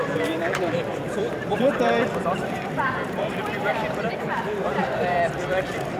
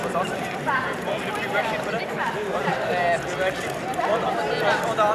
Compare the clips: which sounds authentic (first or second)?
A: second